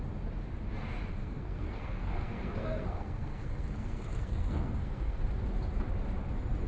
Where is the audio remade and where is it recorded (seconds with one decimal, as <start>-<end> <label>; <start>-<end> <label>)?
0.0-1.2 recorded; 1.2-5.2 remade; 5.2-6.7 recorded